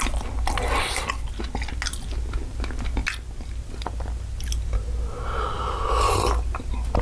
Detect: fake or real real